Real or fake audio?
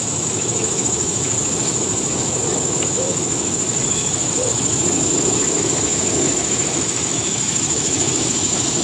fake